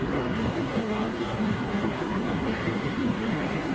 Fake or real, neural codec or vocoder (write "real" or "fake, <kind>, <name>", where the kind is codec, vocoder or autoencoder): fake, codec, SNAC